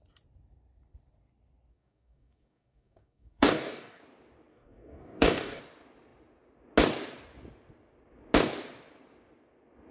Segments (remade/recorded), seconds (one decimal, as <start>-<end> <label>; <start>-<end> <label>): 0.0-1.7 recorded; 1.7-4.0 remade; 4.0-4.5 recorded; 4.5-5.6 remade; 5.6-9.9 recorded